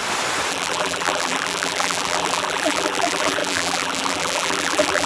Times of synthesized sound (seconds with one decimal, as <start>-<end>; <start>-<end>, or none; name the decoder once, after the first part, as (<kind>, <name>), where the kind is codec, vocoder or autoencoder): 0.5-5.1 (vocoder, BigVGAN v2)